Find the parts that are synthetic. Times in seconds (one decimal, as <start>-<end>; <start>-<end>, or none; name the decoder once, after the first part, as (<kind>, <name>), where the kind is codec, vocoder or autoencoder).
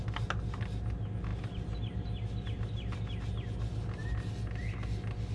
none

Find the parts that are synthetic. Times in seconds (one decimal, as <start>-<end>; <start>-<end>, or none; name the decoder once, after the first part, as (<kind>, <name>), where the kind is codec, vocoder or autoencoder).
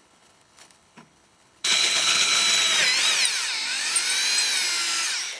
0.0-2.4 (codec, HILCodec)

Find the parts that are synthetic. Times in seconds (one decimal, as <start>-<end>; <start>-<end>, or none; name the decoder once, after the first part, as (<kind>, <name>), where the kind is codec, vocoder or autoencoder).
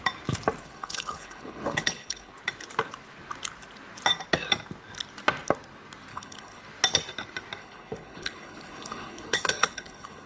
0.6-2.3 (codec, HILCodec); 6.1-6.6; 7.6-10.3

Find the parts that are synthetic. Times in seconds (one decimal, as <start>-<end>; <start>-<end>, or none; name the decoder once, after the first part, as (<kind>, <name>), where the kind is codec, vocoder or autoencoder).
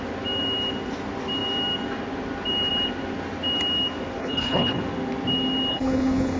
4.2-4.8 (codec, HILCodec); 5.7-6.4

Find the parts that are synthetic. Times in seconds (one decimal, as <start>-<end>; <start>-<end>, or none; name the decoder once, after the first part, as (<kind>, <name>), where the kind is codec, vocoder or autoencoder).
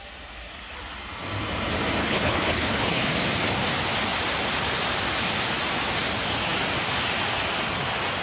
2.0-3.1 (codec, HILCodec)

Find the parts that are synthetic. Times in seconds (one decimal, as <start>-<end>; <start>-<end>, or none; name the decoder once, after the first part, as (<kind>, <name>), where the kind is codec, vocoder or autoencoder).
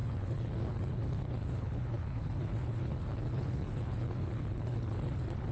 0.0-5.5 (codec, HILCodec)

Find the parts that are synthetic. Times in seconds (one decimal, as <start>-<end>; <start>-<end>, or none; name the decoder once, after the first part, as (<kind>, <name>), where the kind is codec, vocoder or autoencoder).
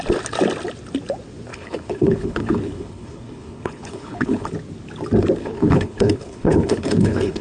1.5-4.5 (codec, HILCodec); 5.4-7.4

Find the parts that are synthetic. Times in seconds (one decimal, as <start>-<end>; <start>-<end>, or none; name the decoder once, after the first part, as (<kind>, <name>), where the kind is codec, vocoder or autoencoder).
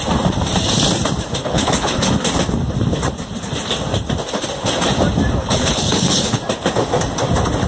1.4-2.1 (codec, HILCodec); 5.4-6.4